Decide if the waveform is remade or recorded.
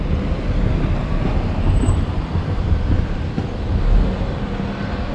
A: recorded